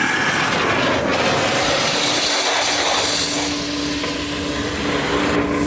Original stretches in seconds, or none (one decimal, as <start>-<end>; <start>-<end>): 0.0-5.7